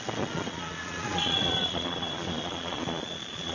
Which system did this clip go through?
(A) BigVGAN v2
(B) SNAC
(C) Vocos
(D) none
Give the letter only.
C